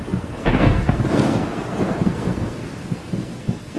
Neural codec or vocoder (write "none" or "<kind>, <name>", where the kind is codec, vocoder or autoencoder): codec, SNAC